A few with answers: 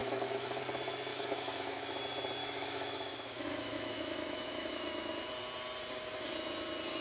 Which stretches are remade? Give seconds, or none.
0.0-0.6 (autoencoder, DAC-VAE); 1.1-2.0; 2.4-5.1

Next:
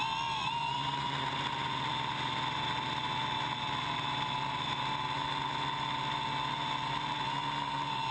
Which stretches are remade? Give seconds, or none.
none

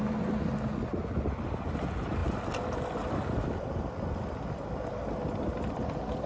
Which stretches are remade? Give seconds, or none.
none

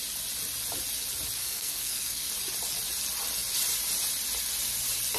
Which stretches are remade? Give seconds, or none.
1.4-2.3 (codec, SNAC)

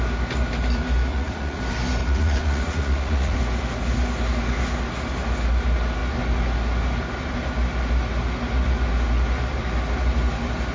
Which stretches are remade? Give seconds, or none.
1.1-1.6 (vocoder, Vocos); 2.0-3.4